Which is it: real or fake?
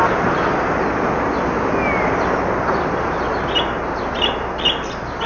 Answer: real